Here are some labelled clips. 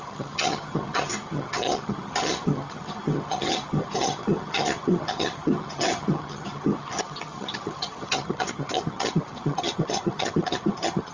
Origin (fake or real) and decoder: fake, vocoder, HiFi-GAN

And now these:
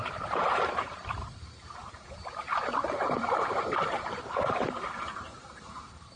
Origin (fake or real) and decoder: fake, vocoder, BigVGAN v2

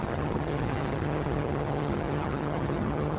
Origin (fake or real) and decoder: fake, vocoder, HiFi-GAN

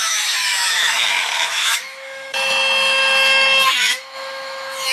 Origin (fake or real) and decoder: fake, autoencoder, DAC-VAE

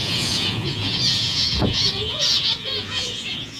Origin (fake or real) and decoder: fake, vocoder, Vocos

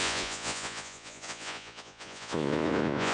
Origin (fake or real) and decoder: fake, vocoder, Vocos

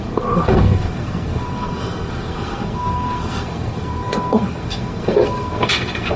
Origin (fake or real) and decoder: fake, codec, SNAC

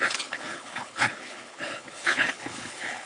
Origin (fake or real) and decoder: fake, codec, HILCodec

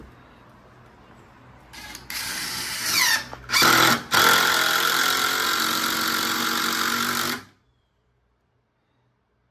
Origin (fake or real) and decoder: real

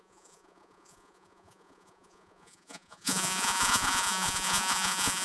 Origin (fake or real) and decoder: fake, vocoder, Vocos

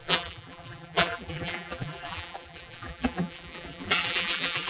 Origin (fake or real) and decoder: fake, vocoder, BigVGAN v2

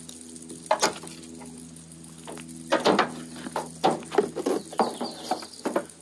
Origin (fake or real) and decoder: real